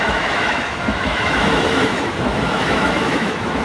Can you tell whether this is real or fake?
fake